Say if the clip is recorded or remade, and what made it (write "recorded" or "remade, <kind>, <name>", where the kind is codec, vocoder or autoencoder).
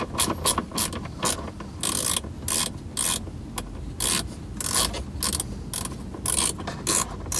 recorded